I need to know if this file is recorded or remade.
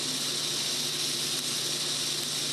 recorded